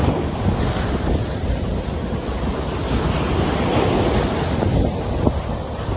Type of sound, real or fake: real